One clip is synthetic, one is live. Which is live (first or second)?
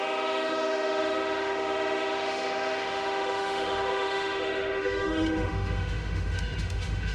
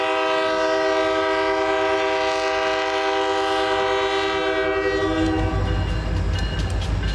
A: second